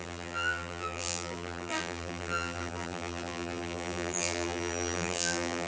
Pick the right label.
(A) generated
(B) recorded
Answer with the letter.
A